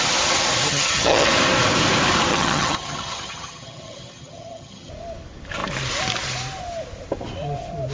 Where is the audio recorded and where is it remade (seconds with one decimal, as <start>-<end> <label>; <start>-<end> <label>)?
0.0-0.7 recorded; 0.7-1.3 remade; 1.3-2.3 recorded; 2.3-4.9 remade; 4.9-7.9 recorded